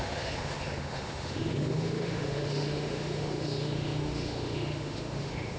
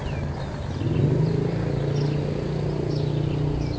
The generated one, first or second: first